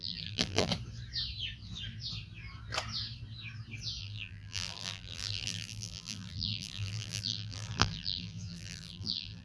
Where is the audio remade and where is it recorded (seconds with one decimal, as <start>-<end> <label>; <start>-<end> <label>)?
0.0-0.7 remade; 0.7-4.0 recorded; 4.0-9.4 remade